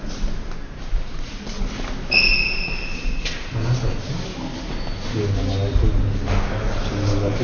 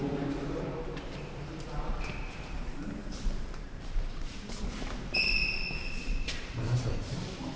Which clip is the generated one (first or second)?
second